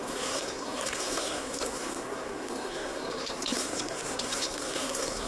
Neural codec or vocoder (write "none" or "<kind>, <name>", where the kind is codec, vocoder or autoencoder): codec, SNAC